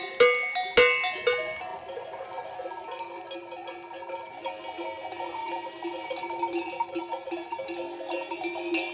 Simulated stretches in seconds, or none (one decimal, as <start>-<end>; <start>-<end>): none